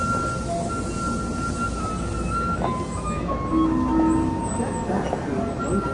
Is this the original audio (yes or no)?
yes